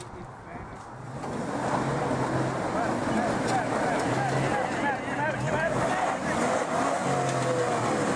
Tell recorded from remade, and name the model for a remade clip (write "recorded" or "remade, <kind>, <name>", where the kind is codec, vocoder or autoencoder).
recorded